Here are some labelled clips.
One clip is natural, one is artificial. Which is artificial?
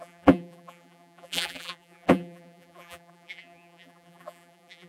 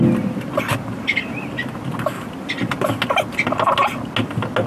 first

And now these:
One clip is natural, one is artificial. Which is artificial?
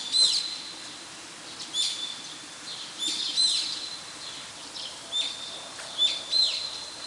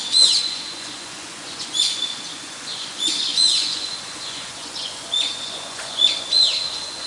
second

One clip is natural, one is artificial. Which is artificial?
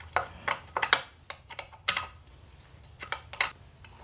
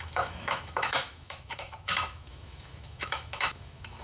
second